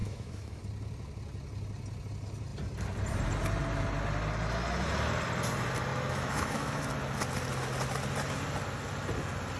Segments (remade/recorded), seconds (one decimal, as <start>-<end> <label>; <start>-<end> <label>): 0.0-0.6 remade; 0.6-5.9 recorded; 5.9-6.8 remade; 6.8-9.6 recorded